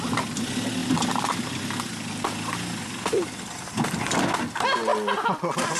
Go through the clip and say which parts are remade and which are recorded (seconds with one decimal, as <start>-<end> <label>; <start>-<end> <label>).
0.0-5.8 recorded